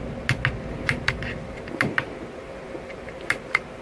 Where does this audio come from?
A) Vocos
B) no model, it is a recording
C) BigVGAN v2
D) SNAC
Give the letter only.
B